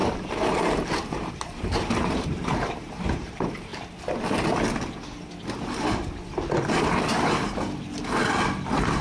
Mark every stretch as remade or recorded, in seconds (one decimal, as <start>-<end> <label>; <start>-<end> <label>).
0.0-3.7 remade; 3.7-9.0 recorded